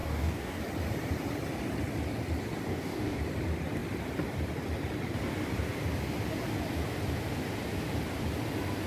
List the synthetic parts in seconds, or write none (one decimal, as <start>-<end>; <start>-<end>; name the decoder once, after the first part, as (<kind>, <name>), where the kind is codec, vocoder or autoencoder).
0.0-0.6 (codec, DAC); 2.7-3.2

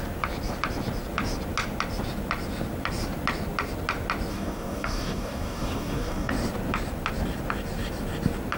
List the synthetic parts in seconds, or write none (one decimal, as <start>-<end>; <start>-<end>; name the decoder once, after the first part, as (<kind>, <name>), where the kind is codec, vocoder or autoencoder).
4.3-6.3 (codec, DAC)

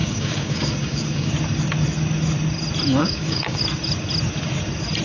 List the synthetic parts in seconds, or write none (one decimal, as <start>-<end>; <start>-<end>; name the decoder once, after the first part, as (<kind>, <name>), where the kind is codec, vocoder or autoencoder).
0.0-1.3 (codec, DAC); 3.0-3.6

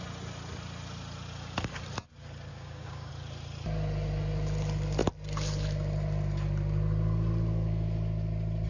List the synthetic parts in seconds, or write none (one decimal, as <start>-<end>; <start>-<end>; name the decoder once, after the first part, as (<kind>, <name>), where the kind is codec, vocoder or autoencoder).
2.5-3.1 (codec, DAC)

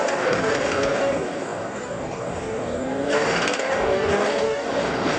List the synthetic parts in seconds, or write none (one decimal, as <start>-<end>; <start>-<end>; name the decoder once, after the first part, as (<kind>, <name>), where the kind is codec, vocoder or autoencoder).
0.0-5.2 (codec, DAC)

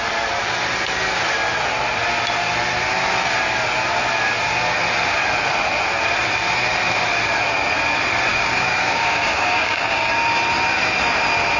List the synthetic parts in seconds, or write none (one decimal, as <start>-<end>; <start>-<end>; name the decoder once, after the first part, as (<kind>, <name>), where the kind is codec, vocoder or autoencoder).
8.3-10.1 (codec, DAC)